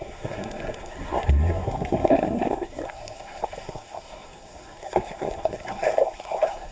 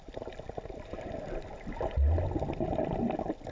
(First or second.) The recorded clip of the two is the second